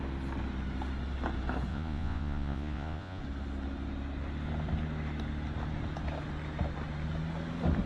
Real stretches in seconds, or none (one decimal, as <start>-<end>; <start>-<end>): 0.0-1.7; 3.2-7.9